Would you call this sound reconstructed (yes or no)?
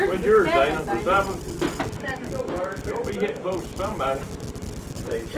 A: no